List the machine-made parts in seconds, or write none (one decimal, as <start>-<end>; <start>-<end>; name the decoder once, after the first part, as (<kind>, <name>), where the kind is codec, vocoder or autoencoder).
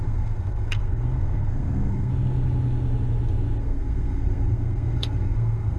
0.0-2.1 (codec, SNAC); 3.6-5.8